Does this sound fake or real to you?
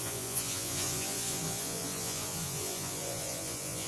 fake